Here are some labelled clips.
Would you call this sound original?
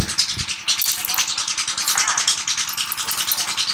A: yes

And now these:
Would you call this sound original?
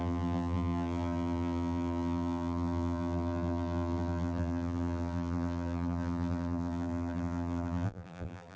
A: no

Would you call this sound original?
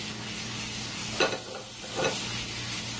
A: yes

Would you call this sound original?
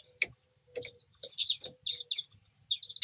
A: yes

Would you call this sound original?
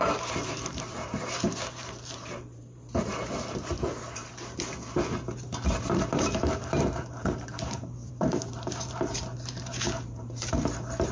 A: no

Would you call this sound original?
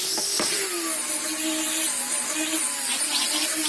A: yes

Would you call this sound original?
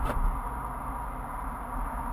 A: yes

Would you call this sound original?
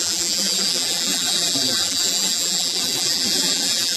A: no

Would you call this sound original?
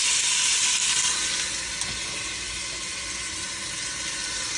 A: yes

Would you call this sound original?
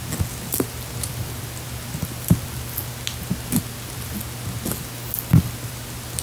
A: yes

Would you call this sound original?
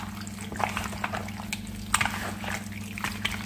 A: yes